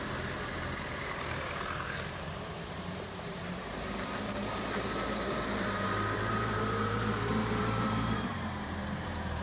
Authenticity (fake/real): fake